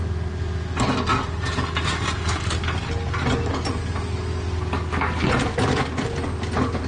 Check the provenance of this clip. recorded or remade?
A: recorded